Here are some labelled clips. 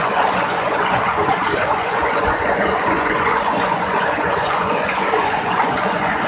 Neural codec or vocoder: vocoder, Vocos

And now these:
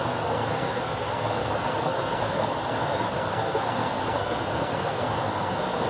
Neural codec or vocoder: codec, SNAC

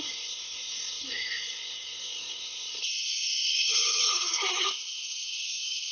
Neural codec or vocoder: codec, SNAC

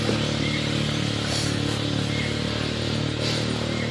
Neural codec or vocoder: none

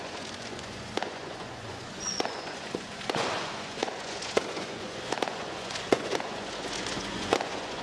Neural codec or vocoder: vocoder, Vocos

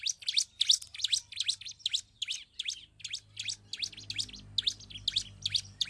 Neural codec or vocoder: none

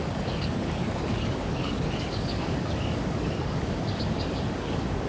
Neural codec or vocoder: codec, DAC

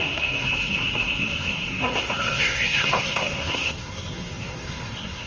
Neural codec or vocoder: codec, SNAC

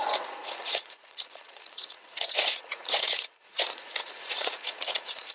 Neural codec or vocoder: vocoder, Vocos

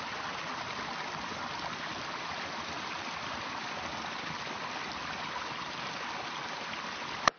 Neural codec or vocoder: none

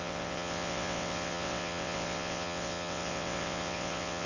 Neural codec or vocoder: vocoder, WaveNeXt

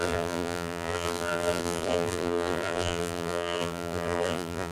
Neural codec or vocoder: vocoder, BigVGAN v2